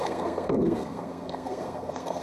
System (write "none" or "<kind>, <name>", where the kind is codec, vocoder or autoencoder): codec, SNAC